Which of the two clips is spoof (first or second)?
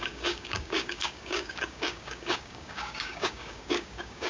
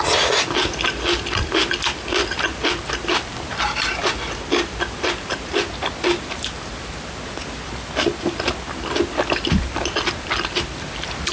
first